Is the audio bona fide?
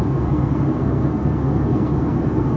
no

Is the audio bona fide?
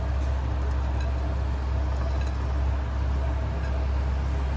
yes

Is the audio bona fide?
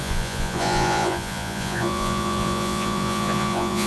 no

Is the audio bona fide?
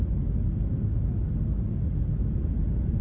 yes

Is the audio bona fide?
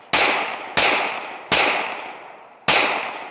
yes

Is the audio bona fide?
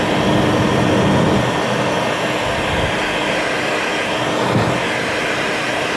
yes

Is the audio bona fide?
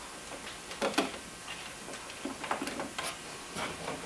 yes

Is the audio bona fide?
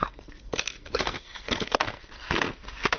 no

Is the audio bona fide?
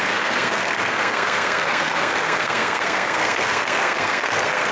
no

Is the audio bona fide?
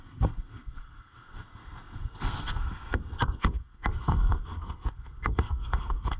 no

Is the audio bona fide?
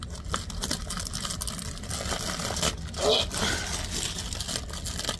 yes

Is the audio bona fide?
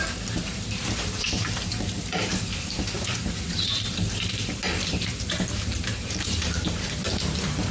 no